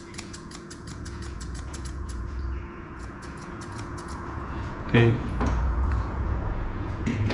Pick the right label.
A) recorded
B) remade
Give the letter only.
B